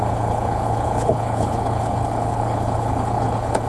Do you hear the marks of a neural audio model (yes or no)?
yes